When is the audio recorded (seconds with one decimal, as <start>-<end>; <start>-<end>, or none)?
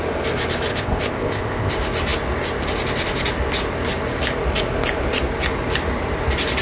0.0-0.7; 1.7-6.6